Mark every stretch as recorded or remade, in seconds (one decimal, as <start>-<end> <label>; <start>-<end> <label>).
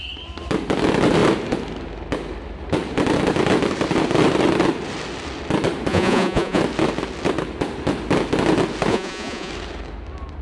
0.0-5.9 recorded; 5.9-6.6 remade; 6.6-8.9 recorded; 8.9-9.5 remade; 9.5-10.4 recorded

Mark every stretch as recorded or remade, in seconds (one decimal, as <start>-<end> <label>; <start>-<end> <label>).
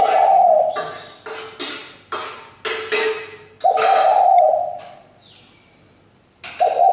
0.0-6.9 recorded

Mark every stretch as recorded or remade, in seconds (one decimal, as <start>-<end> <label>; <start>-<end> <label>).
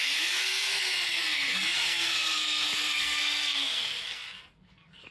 0.0-5.1 remade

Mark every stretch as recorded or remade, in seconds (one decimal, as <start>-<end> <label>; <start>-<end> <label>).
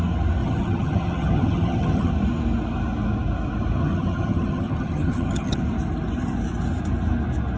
0.0-0.4 recorded; 0.4-2.1 remade; 2.1-3.8 recorded; 3.8-5.6 remade; 5.6-7.6 recorded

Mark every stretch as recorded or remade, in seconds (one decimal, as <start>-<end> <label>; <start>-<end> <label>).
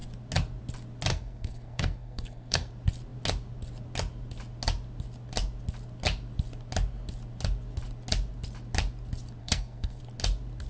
0.0-1.1 recorded; 1.1-2.7 remade; 2.7-9.4 recorded; 9.4-10.0 remade; 10.0-10.7 recorded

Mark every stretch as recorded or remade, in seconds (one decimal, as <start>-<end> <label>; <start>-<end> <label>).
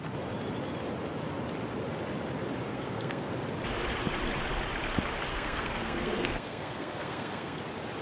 0.0-2.7 recorded; 2.7-3.3 remade; 3.3-5.3 recorded; 5.3-7.6 remade; 7.6-8.0 recorded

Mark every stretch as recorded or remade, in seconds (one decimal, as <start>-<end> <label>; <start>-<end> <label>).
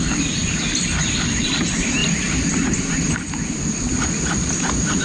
0.0-5.0 recorded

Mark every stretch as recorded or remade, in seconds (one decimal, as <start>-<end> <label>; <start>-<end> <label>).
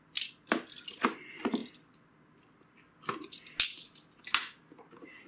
0.0-5.3 recorded